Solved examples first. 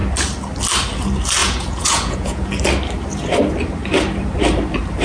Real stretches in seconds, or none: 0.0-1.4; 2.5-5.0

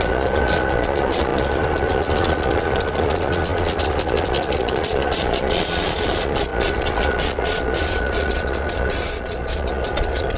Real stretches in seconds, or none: none